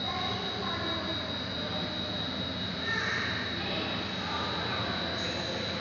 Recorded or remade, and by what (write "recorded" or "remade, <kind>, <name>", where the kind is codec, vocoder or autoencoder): recorded